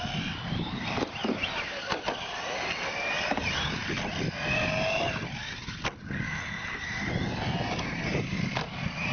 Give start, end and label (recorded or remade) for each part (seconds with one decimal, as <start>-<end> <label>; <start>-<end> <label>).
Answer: 0.0-9.1 recorded